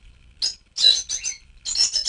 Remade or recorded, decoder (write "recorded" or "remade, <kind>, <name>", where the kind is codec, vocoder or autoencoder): recorded